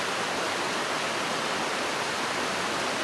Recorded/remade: recorded